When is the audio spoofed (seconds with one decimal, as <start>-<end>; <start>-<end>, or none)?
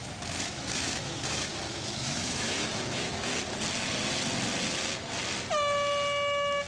0.0-3.3